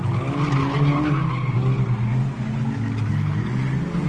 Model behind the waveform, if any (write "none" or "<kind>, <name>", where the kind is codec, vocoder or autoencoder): none